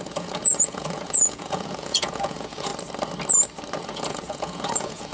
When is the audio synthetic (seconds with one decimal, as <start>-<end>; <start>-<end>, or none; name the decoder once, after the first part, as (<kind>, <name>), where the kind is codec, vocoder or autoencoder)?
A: 0.0-2.7 (vocoder, Vocos); 3.8-5.1